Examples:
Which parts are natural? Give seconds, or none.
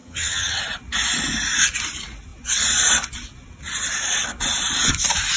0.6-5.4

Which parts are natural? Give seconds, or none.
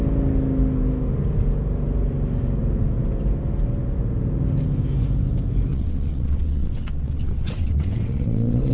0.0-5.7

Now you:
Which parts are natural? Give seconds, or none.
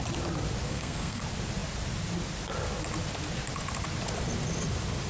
0.0-0.7; 1.2-5.1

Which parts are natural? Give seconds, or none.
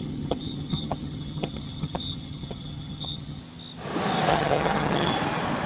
3.4-4.3; 5.1-5.7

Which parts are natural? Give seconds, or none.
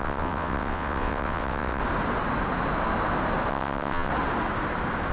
1.8-3.5; 4.1-5.1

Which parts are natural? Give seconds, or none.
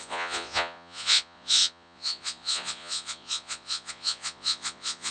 none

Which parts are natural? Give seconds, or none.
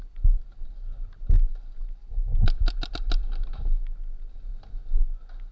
0.0-5.5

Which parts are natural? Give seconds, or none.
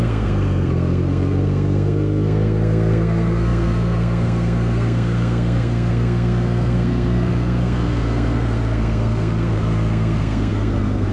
none